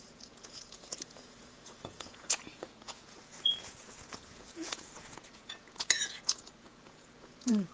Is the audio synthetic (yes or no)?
yes